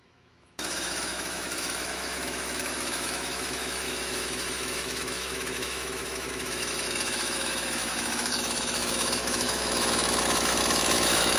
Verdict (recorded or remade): remade